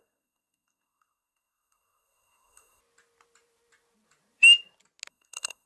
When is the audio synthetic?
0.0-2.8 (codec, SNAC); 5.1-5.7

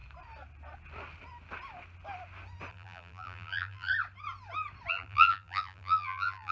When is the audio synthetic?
2.7-3.9 (vocoder, BigVGAN v2); 4.9-6.5

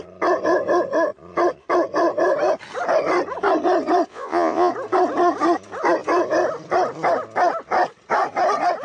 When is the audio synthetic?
4.1-4.7 (vocoder, Vocos)

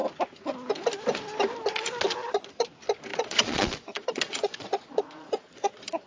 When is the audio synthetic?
3.1-6.1 (vocoder, Vocos)